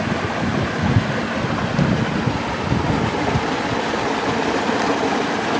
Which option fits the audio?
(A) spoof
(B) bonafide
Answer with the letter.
B